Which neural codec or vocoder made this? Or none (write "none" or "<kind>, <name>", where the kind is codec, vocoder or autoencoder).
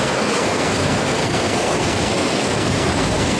codec, SNAC